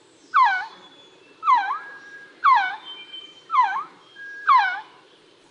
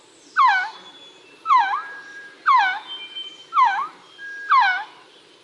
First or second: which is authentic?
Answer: second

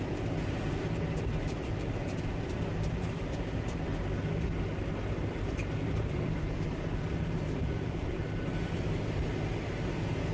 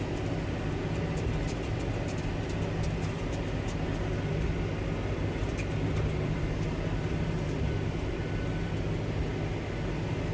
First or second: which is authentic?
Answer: second